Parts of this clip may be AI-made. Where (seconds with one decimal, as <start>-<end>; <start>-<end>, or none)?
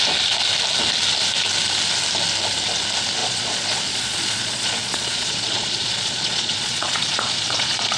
3.2-8.0